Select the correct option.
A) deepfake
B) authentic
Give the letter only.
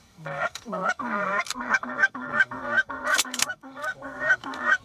A